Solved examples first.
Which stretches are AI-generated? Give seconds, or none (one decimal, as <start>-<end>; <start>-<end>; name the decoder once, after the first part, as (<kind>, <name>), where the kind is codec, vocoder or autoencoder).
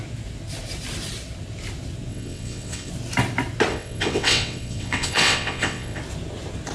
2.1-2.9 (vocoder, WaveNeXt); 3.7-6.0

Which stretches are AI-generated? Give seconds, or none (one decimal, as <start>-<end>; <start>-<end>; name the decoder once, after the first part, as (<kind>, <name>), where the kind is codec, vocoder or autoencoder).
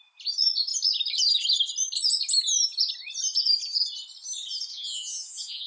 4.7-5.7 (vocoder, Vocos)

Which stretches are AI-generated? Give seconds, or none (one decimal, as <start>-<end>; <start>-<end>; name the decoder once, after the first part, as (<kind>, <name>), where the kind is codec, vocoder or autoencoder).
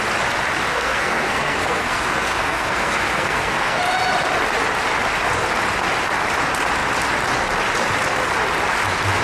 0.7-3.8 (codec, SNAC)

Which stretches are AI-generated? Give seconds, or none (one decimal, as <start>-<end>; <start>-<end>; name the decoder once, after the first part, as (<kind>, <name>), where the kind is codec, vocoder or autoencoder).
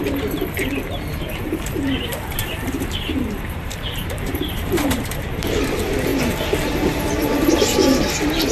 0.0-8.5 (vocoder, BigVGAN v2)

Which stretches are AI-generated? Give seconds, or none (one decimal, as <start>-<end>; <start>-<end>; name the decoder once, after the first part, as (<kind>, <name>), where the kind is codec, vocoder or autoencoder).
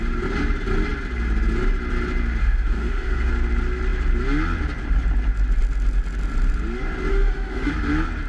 2.4-3.3 (autoencoder, DAC-VAE); 7.1-7.7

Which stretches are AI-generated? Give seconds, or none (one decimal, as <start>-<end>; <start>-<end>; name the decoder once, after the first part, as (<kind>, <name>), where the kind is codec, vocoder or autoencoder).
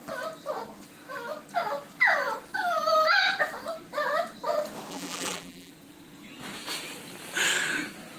4.9-5.7 (vocoder, BigVGAN v2)